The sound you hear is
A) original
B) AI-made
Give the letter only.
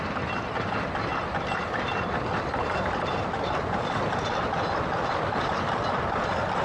A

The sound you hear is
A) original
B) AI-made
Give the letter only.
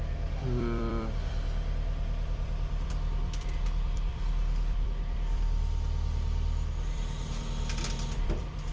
B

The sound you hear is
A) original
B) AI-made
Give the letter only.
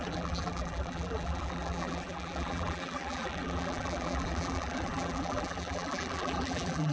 B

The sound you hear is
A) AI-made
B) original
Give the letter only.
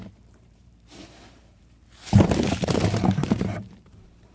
A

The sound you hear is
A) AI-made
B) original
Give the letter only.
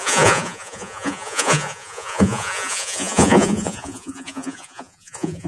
A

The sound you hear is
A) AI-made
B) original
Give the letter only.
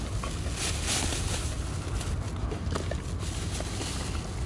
B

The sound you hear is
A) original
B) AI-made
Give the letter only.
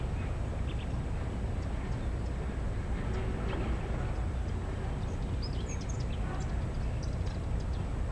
A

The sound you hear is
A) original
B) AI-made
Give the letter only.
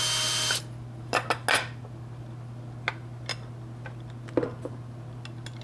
A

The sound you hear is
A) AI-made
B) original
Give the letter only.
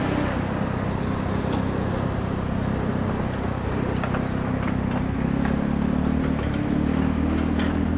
B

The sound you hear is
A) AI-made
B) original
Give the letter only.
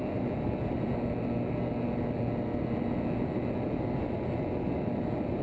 B